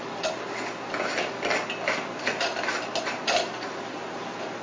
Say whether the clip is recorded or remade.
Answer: recorded